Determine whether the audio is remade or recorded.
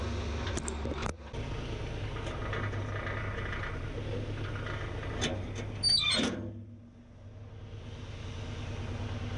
recorded